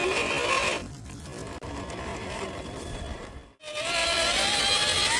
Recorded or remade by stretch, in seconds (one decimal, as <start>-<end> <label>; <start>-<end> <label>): 0.0-2.1 recorded; 2.1-3.3 remade; 3.3-4.0 recorded; 4.0-4.6 remade; 4.6-5.2 recorded